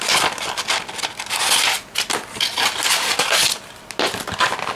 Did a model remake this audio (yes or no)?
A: no